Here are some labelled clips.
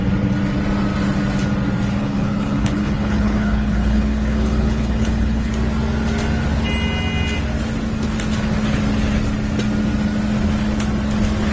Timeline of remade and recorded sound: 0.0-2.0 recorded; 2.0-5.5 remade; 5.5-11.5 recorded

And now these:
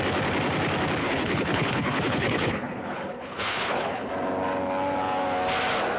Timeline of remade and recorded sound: 0.0-1.0 recorded; 1.0-4.1 remade; 4.1-6.0 recorded

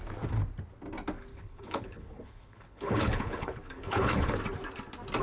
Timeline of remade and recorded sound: 0.0-1.3 recorded; 1.3-4.4 remade; 4.4-5.2 recorded

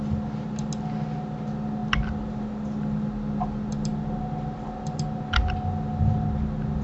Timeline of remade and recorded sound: 0.0-6.8 recorded